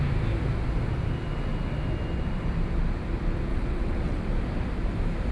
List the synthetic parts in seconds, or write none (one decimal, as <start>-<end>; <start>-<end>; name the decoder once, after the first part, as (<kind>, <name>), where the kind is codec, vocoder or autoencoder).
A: 3.5-4.2 (vocoder, WaveNeXt)